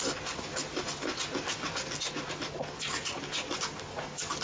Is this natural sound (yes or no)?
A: yes